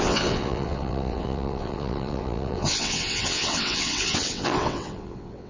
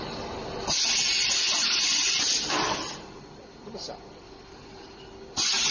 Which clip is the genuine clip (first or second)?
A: second